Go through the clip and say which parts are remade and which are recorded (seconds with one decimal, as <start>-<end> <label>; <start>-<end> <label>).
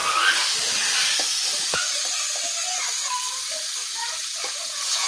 0.0-3.8 recorded; 3.8-5.1 remade